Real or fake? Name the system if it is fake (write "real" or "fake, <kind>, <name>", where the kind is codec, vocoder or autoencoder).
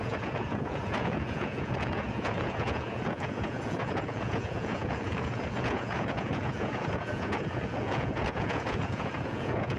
fake, vocoder, Vocos